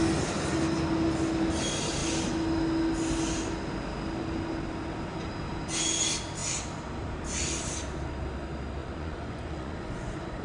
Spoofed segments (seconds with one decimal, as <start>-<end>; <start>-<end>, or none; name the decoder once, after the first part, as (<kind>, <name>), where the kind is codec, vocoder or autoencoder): 8.8-10.4 (vocoder, Vocos)

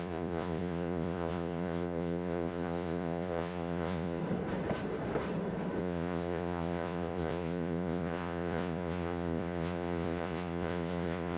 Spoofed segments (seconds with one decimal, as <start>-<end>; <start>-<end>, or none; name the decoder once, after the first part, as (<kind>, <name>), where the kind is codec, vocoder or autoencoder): 0.0-4.2 (vocoder, Vocos); 5.8-11.4

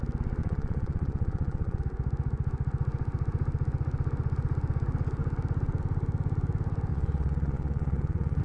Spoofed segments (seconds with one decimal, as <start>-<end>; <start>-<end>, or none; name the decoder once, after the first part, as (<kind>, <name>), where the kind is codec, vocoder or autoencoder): 0.4-1.8 (vocoder, Vocos); 6.9-8.4

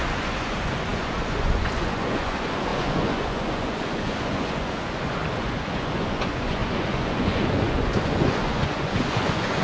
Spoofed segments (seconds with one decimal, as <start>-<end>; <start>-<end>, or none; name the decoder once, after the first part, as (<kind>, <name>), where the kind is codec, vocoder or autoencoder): 0.0-9.6 (vocoder, Vocos)

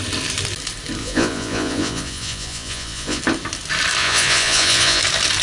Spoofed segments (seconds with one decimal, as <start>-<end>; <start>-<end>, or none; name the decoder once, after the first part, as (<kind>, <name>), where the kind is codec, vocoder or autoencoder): 1.0-3.2 (vocoder, Vocos); 4.0-5.0

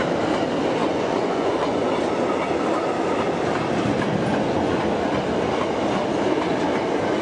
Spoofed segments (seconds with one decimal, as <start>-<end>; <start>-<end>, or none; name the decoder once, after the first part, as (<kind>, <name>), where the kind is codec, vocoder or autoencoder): 0.8-1.9 (vocoder, Vocos); 4.3-4.8

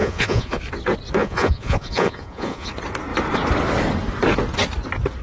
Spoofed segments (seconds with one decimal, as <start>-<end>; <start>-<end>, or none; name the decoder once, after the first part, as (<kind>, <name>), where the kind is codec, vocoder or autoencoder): 0.0-0.6 (vocoder, Vocos); 1.2-2.7

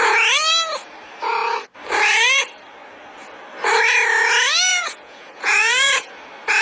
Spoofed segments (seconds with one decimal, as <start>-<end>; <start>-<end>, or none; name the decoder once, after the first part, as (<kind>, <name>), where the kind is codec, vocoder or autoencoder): 4.7-6.1 (vocoder, Vocos)